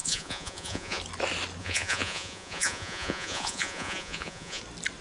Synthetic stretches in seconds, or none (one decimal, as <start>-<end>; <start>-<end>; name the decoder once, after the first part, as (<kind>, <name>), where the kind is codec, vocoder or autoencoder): 0.0-1.0 (vocoder, Vocos); 1.6-4.6